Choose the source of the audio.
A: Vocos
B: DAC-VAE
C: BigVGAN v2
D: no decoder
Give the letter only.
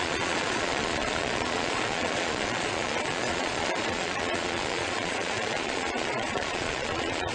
A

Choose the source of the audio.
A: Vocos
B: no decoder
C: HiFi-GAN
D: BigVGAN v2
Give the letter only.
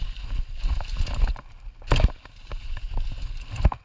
B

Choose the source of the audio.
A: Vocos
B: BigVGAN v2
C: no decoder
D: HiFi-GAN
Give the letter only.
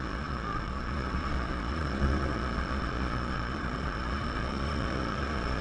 A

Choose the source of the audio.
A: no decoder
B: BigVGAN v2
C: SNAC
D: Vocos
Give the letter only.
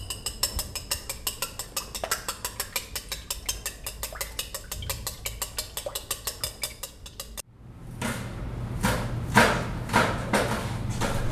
A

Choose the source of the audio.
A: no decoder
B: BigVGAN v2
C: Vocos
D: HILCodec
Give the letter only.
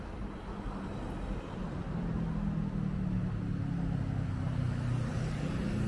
A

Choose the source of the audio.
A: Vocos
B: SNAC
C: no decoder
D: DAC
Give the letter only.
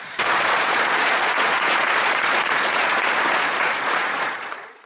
A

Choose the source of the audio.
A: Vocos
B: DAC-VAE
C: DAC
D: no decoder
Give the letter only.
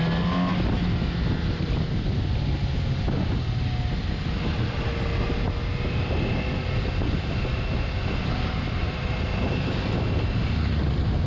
D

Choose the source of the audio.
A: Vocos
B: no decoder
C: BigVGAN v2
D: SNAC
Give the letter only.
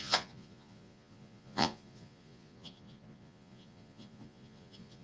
A